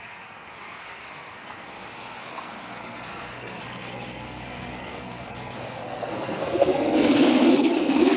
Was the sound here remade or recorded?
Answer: remade